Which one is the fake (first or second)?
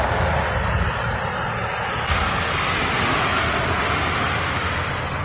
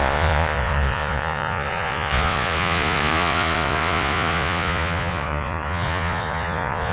second